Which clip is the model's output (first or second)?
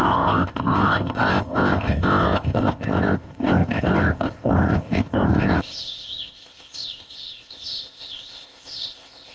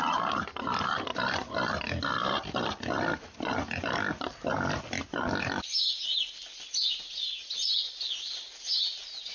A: first